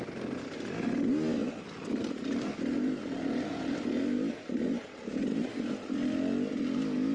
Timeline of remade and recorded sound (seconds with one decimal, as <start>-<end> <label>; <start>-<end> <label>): 0.0-1.4 recorded; 1.4-5.7 remade; 5.7-7.1 recorded